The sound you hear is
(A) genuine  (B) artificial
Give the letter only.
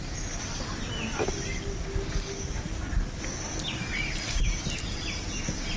A